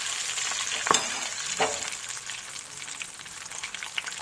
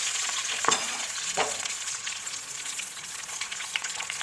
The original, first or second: first